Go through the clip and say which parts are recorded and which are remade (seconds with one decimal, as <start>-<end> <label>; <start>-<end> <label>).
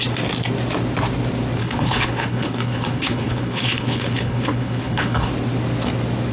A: 0.0-1.6 recorded; 1.6-5.3 remade; 5.3-6.3 recorded